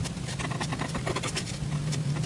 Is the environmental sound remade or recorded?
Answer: recorded